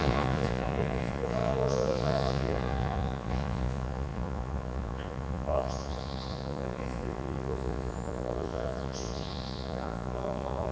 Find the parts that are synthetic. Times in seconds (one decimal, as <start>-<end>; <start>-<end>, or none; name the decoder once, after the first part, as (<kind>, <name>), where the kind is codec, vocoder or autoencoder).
0.0-10.7 (vocoder, Vocos)